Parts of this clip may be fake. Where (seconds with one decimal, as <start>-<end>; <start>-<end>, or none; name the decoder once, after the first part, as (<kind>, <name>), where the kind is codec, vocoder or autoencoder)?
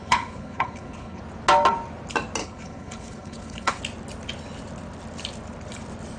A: 0.0-1.2 (codec, HILCodec); 2.4-3.8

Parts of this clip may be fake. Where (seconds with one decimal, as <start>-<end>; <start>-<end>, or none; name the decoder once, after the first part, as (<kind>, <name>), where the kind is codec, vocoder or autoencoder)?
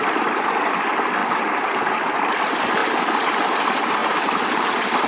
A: none